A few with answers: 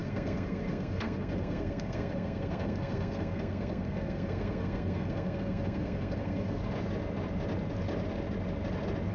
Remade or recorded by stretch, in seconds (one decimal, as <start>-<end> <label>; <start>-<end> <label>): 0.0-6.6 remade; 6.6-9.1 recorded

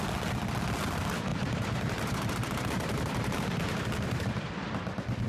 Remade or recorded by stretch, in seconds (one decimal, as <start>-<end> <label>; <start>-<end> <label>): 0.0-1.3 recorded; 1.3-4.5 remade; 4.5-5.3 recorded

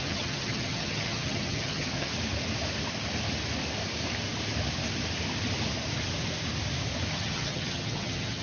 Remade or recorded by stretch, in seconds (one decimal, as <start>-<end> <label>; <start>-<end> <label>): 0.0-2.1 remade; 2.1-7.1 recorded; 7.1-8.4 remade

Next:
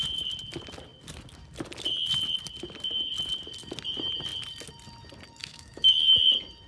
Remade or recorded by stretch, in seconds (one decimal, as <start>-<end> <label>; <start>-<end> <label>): 0.0-5.4 recorded; 5.4-5.9 remade; 5.9-6.7 recorded

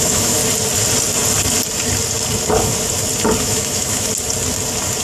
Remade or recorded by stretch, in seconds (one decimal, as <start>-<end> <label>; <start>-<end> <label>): 0.0-0.4 remade; 0.4-3.4 recorded; 3.4-4.1 remade; 4.1-5.0 recorded